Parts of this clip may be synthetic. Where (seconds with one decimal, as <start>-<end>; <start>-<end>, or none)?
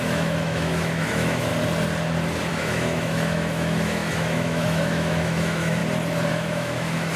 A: 0.0-1.5; 2.5-5.8; 6.3-7.2